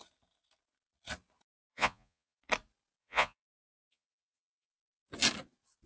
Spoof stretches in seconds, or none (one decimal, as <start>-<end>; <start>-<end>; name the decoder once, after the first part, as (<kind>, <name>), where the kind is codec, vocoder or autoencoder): 1.7-2.4 (vocoder, Vocos); 3.0-4.7